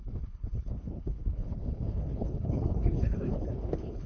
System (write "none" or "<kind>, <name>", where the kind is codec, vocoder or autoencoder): codec, HILCodec